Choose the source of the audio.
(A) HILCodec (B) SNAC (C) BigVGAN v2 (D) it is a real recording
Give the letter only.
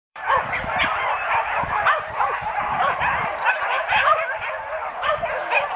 C